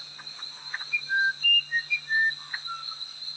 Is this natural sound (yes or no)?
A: yes